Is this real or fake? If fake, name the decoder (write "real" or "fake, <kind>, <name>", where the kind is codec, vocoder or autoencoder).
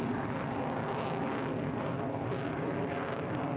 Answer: real